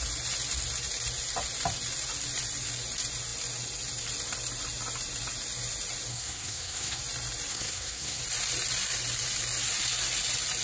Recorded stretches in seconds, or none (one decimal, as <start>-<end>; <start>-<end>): 0.0-6.1; 7.0-7.5; 8.2-10.6